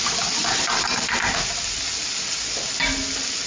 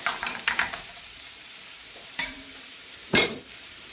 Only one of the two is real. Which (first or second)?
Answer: first